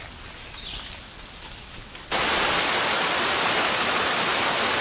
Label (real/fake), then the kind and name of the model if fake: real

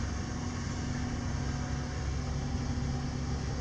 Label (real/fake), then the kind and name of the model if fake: real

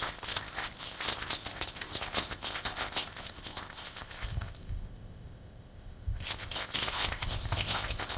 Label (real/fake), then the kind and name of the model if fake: fake, codec, ZipCodec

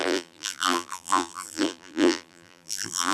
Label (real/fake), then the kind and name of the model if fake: fake, vocoder, BigVGAN v2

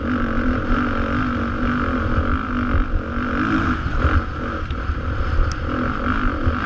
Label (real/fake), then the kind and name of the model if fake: real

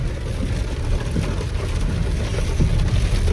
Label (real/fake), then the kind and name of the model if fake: real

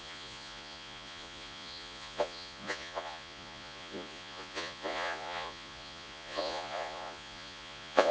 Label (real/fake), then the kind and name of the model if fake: fake, vocoder, Vocos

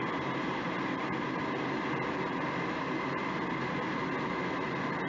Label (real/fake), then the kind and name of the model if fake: real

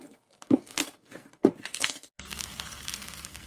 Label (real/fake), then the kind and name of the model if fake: fake, codec, SNAC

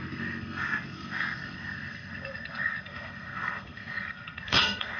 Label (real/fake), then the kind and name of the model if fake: fake, codec, SNAC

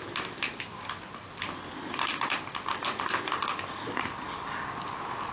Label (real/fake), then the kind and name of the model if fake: real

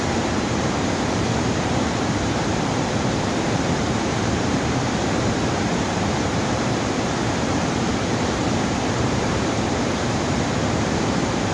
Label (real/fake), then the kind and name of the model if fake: fake, vocoder, BigVGAN v2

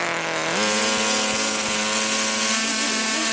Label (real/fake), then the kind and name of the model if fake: real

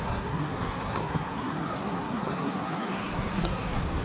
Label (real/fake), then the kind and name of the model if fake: fake, codec, SNAC